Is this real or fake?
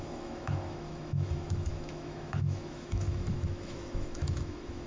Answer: fake